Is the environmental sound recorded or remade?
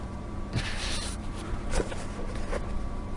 remade